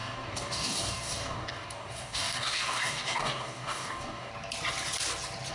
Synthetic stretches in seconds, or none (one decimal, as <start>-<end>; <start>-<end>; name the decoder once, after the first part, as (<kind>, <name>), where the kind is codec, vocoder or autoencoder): 0.0-4.3 (codec, DAC)